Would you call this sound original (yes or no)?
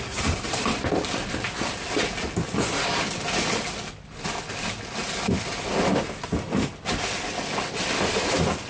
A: yes